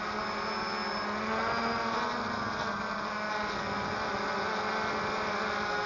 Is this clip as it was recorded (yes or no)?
yes